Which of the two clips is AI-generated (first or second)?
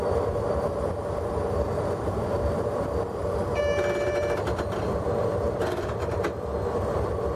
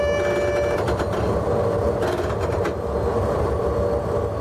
first